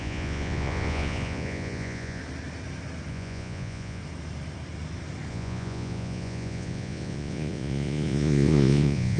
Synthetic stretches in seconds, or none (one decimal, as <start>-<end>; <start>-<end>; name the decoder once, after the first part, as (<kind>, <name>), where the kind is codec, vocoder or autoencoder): 0.0-2.2 (vocoder, Vocos); 3.1-4.0; 5.3-9.2